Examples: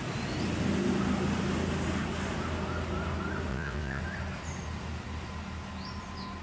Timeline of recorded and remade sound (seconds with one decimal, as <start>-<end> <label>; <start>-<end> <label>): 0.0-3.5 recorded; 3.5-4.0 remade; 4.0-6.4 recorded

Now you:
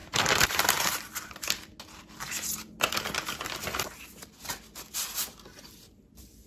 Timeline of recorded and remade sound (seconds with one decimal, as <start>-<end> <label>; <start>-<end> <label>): 0.0-0.8 remade; 0.8-6.5 recorded

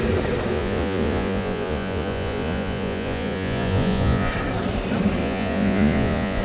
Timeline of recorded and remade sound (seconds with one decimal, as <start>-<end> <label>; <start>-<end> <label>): 0.0-0.5 recorded; 0.5-4.3 remade; 4.3-5.2 recorded; 5.2-6.4 remade